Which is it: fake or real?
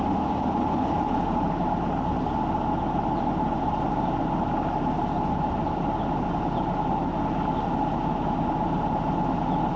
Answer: real